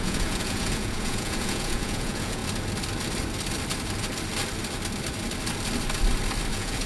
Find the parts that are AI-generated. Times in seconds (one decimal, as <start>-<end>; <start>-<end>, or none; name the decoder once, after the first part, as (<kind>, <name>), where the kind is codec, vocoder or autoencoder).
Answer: 0.0-2.4 (vocoder, Vocos); 6.5-6.9